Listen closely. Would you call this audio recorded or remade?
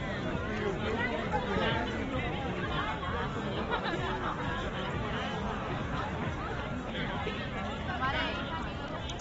recorded